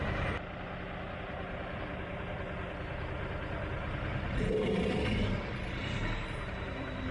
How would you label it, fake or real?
real